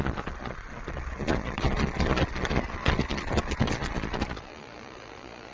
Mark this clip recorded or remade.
remade